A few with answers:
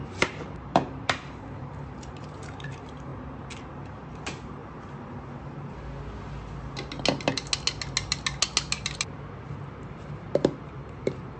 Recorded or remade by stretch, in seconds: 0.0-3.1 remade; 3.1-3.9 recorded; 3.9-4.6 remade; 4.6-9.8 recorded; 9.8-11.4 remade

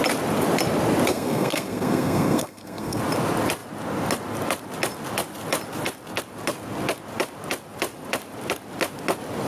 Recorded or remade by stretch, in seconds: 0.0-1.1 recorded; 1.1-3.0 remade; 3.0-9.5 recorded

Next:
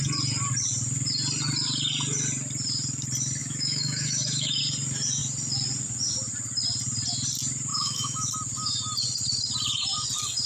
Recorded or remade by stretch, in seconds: 0.0-3.4 recorded; 3.4-4.6 remade; 4.6-7.7 recorded; 7.7-8.3 remade; 8.3-10.5 recorded

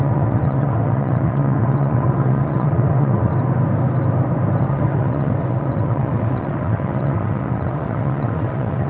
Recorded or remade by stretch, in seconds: 0.0-3.3 remade; 3.3-4.6 recorded; 4.6-8.9 remade

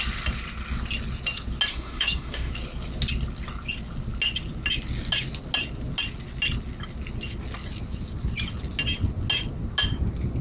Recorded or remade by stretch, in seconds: 0.0-1.7 recorded; 1.7-2.5 remade; 2.5-10.4 recorded